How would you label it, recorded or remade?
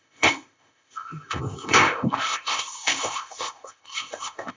remade